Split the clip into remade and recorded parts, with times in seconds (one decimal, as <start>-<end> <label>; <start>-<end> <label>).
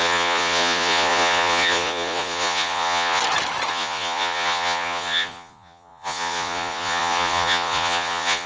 0.0-3.2 remade; 3.2-3.7 recorded; 3.7-8.5 remade